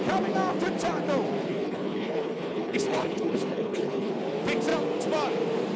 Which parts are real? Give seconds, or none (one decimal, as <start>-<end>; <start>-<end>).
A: 0.0-1.5; 4.1-5.8